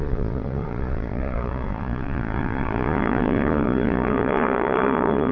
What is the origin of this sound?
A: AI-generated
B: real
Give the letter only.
A